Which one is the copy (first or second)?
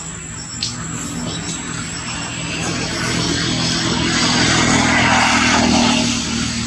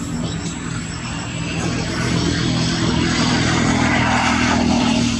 second